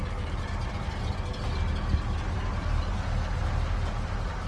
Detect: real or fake real